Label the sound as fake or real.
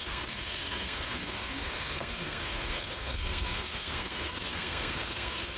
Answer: fake